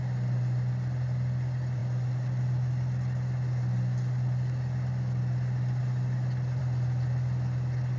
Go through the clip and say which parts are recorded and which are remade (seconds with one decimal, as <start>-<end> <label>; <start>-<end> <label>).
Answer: 0.0-8.0 recorded